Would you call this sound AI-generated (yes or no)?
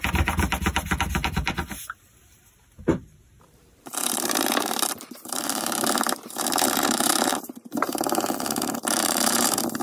yes